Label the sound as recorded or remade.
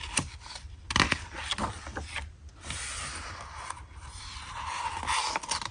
recorded